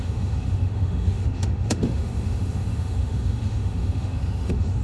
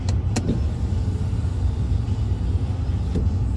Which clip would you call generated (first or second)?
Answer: first